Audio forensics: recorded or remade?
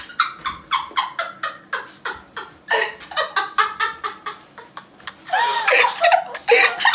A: recorded